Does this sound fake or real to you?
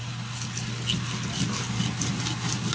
real